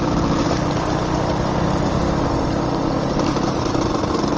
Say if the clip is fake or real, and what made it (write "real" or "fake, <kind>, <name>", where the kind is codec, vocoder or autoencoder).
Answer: real